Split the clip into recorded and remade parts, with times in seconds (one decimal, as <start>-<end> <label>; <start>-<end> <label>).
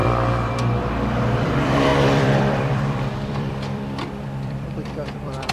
0.0-5.5 remade